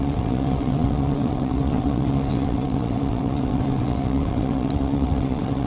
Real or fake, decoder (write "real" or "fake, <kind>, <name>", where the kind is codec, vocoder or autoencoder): fake, vocoder, WaveNeXt